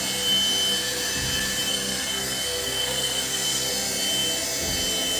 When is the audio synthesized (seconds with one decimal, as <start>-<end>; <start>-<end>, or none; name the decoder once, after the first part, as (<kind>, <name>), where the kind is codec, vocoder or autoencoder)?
1.7-3.7 (codec, SNAC)